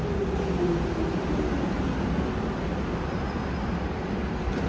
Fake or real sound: real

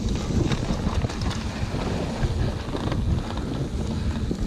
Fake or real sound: real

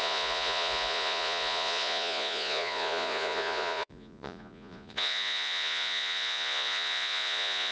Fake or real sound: fake